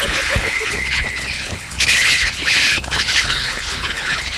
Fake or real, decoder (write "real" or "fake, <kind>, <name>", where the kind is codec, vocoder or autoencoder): fake, codec, HILCodec